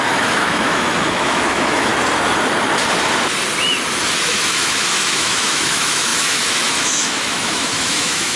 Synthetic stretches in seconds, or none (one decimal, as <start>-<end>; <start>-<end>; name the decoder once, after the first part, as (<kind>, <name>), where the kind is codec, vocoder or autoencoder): 0.0-1.9 (autoencoder, DAC-VAE); 4.2-8.4